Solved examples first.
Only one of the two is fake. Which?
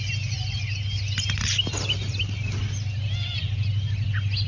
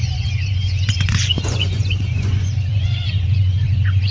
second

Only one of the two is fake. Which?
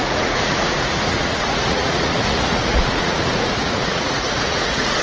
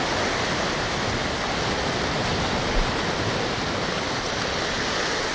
first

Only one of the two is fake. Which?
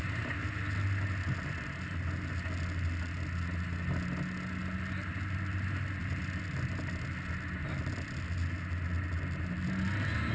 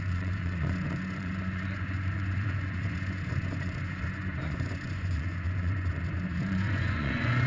second